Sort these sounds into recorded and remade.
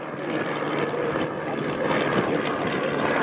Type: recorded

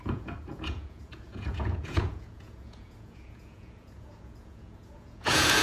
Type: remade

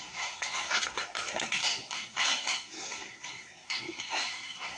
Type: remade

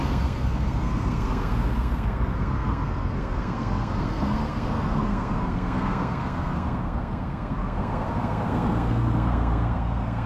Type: remade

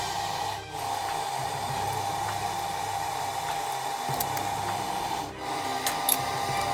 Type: recorded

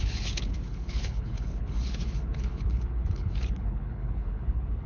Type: remade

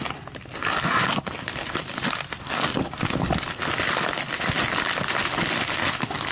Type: remade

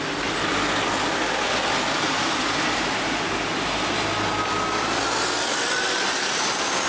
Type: recorded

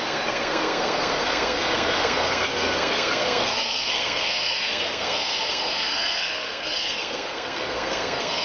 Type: remade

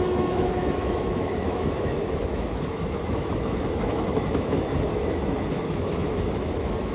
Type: remade